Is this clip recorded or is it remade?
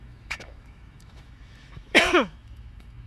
remade